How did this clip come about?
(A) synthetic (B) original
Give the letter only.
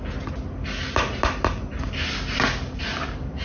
B